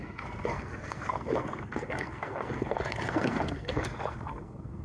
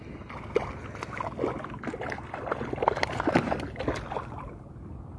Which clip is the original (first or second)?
second